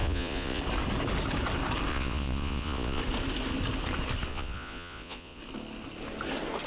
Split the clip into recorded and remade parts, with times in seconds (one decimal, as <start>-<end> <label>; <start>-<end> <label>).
0.0-0.6 remade; 0.6-1.9 recorded; 1.9-3.0 remade; 3.0-4.3 recorded; 4.3-5.4 remade; 5.4-6.7 recorded